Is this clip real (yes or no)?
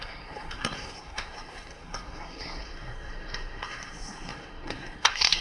no